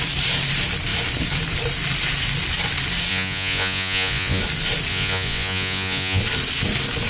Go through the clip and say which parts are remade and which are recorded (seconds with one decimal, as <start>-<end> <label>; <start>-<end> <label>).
0.0-3.1 recorded; 3.1-4.4 remade; 4.4-4.9 recorded; 4.9-6.2 remade; 6.2-7.1 recorded